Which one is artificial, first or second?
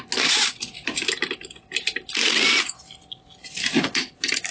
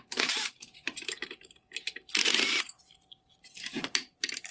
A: second